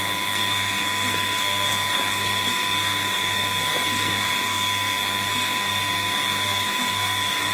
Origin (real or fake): fake